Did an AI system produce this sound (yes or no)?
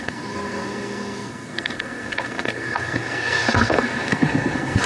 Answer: yes